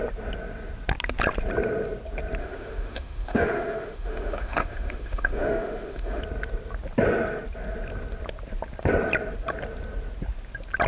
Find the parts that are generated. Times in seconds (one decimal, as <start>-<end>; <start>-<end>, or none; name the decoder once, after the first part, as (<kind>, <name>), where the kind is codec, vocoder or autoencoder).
2.4-6.2 (autoencoder, DAC-VAE)